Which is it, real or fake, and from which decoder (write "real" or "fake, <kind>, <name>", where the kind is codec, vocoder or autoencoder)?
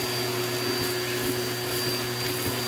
real